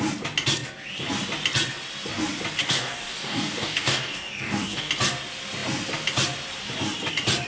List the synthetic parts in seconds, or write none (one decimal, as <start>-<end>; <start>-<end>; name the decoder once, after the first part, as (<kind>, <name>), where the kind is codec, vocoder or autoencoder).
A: 2.6-4.9 (codec, DAC)